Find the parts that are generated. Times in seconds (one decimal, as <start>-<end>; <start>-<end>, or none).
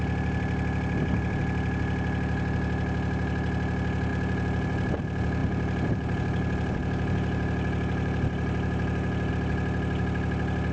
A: 4.1-5.0; 5.4-9.3